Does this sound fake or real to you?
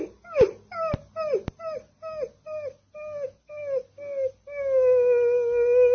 real